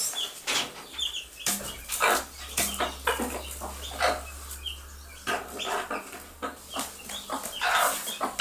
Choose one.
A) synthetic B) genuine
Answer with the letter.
B